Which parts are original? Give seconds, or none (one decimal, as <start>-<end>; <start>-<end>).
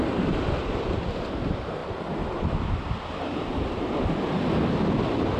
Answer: 0.0-5.4